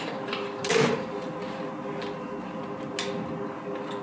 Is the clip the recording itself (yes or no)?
yes